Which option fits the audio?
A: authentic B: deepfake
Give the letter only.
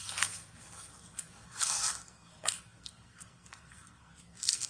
B